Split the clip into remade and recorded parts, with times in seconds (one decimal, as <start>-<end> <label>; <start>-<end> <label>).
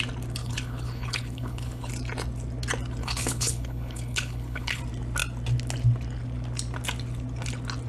0.0-0.4 recorded; 0.4-1.9 remade; 1.9-3.0 recorded; 3.0-4.8 remade; 4.8-7.9 recorded